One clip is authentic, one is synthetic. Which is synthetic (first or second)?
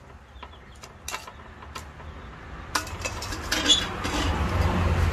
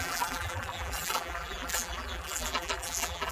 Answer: second